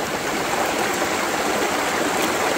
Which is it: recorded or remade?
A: recorded